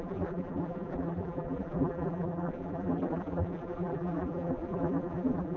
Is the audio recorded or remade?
remade